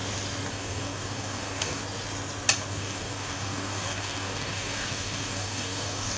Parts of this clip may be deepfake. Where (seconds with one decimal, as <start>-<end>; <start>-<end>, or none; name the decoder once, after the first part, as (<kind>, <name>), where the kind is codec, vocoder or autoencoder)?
0.5-1.8 (codec, DAC); 2.7-6.2